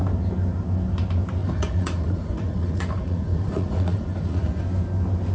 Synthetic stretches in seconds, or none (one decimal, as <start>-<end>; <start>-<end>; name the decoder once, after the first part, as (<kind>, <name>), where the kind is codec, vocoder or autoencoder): 1.4-4.6 (vocoder, Vocos)